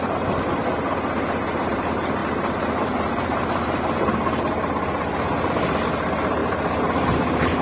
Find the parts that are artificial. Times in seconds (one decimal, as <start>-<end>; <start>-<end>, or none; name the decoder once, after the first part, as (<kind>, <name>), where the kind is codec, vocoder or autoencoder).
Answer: 0.0-0.6 (vocoder, BigVGAN v2); 1.6-6.4